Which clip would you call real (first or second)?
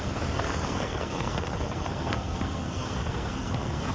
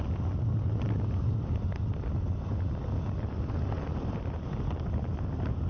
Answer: second